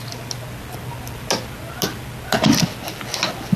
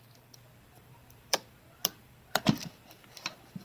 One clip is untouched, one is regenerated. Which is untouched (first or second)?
first